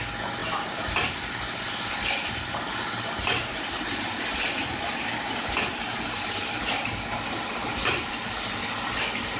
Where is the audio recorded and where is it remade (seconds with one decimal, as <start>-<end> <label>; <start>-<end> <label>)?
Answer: 0.0-0.4 recorded; 0.4-5.6 remade; 5.6-7.6 recorded; 7.6-8.2 remade; 8.2-9.4 recorded